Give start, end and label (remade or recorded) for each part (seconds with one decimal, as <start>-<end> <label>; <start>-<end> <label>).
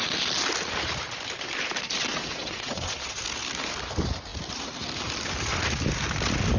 0.0-2.1 recorded; 2.1-3.2 remade; 3.2-6.6 recorded